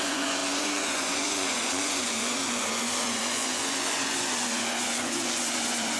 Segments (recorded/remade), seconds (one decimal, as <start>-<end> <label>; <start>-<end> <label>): 0.0-6.0 remade